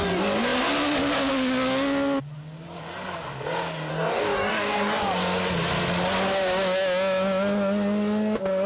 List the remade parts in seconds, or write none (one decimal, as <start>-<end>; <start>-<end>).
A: 3.9-5.0